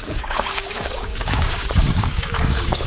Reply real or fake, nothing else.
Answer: fake